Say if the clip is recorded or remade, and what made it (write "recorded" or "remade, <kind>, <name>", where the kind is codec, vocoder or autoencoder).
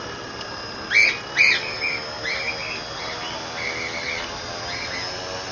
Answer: recorded